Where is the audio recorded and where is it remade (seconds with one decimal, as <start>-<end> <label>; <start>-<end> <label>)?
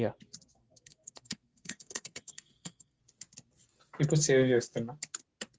0.0-0.5 recorded; 0.5-3.0 remade; 3.0-5.6 recorded